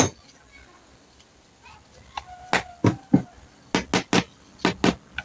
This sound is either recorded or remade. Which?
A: recorded